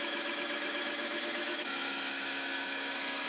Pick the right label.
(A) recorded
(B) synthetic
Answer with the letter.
B